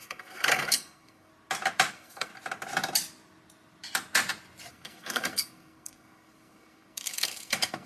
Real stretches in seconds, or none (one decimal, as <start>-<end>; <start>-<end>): 1.3-1.9; 2.3-4.7